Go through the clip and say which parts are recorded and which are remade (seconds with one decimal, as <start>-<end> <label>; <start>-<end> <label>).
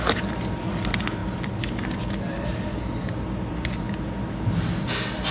0.0-5.3 recorded